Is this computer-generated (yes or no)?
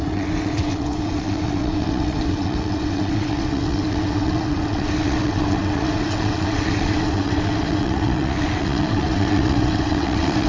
yes